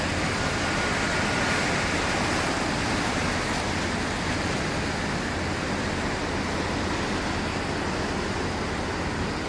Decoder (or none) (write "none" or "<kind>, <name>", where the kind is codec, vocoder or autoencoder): none